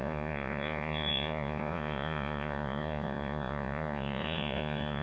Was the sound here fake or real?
fake